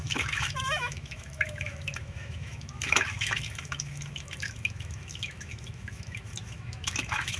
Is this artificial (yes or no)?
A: yes